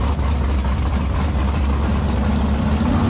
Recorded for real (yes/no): yes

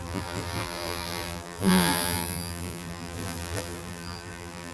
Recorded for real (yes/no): no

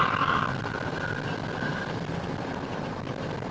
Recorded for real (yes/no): yes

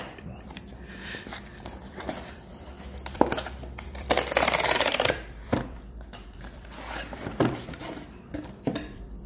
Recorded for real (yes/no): no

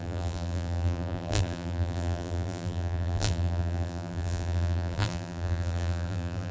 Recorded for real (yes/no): no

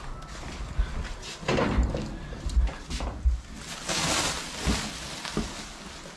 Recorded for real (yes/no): yes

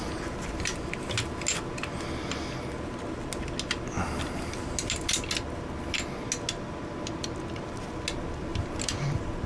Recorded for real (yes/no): yes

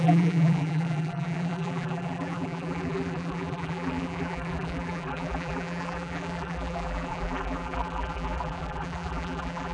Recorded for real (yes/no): no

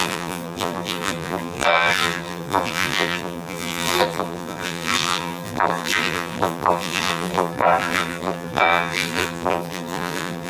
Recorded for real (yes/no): no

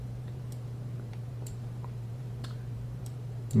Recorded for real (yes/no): no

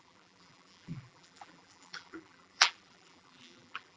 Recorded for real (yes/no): no